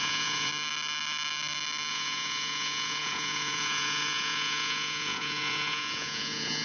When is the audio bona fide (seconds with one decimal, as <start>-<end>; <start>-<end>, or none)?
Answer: 0.5-1.9